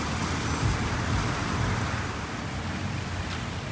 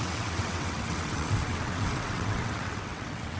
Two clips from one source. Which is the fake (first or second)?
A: second